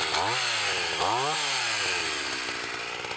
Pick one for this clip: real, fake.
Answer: real